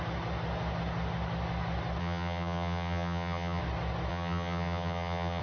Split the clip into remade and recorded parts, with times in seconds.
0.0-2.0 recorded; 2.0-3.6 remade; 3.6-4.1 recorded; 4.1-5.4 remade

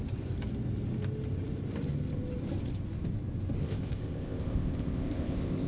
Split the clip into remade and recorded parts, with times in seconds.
0.0-3.6 recorded; 3.6-5.7 remade

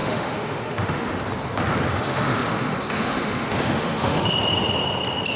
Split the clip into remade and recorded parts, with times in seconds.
0.0-1.2 remade; 1.2-1.9 recorded; 1.9-4.3 remade; 4.3-5.4 recorded